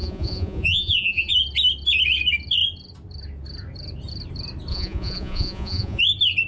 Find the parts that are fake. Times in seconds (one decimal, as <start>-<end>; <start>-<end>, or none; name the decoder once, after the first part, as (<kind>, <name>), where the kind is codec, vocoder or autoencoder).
0.0-1.3 (vocoder, Vocos); 4.7-6.0